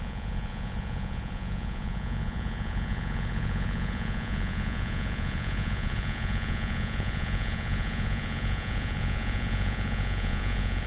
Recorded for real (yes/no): no